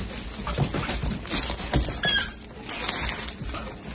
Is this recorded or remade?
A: recorded